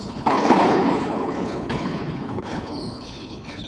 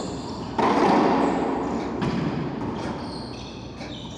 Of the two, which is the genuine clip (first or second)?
second